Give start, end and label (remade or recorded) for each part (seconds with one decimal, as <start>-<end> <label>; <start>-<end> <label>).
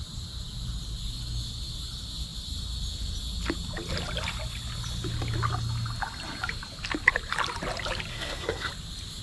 0.0-8.1 recorded; 8.1-8.7 remade; 8.7-9.2 recorded